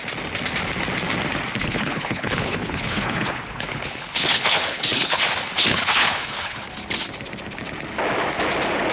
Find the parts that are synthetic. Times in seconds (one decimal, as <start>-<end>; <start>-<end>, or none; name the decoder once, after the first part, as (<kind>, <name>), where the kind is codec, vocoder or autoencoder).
1.6-5.2 (codec, HILCodec); 5.7-6.7